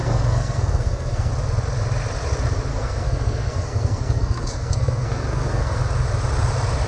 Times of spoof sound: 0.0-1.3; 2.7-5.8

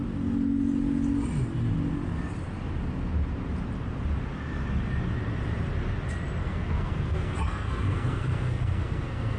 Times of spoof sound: 6.4-9.4

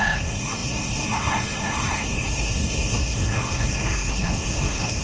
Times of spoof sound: 0.0-5.0

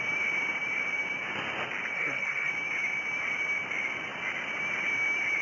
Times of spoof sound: 1.9-2.5

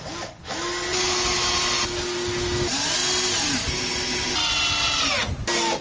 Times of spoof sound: none